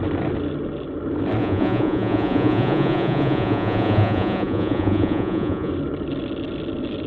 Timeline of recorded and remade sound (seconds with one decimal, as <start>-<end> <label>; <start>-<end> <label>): 0.0-1.4 recorded; 1.4-5.7 remade; 5.7-7.1 recorded